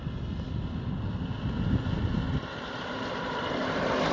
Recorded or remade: recorded